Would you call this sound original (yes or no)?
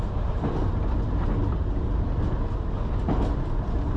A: yes